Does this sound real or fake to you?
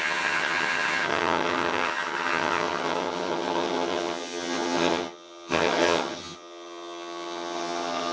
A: fake